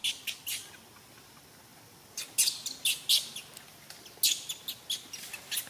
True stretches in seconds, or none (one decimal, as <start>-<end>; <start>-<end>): 0.0-5.7